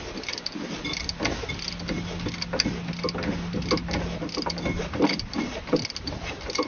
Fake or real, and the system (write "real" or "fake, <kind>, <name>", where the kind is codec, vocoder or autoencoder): real